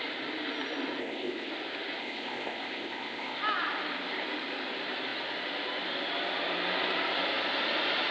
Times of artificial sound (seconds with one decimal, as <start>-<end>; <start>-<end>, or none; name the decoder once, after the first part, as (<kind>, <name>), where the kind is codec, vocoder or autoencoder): 1.0-1.5 (codec, ZipCodec); 2.0-3.4